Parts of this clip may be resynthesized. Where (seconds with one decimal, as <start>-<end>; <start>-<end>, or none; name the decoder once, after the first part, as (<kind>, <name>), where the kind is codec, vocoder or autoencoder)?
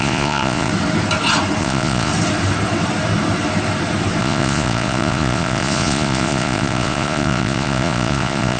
0.0-0.7 (vocoder, Vocos); 1.6-2.1; 4.2-8.6